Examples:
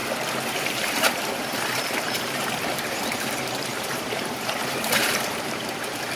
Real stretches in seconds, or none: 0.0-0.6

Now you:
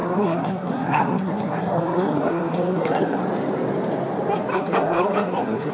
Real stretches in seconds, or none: 3.2-4.5

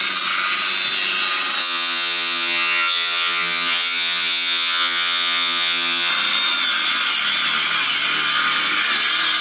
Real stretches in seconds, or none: 0.0-1.6; 6.1-9.4

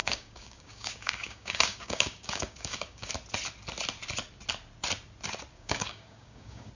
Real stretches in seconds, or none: 3.1-5.5